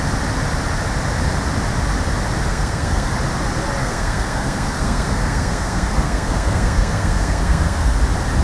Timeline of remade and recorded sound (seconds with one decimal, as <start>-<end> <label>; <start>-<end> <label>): 0.0-2.5 recorded; 2.5-3.1 remade; 3.1-3.8 recorded; 3.8-8.0 remade; 8.0-8.4 recorded